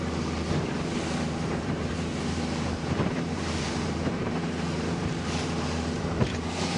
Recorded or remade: remade